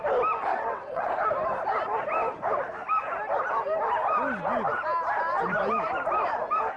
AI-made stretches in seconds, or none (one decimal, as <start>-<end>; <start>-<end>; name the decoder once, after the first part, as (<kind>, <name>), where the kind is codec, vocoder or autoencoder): 0.5-1.1 (vocoder, WaveNeXt)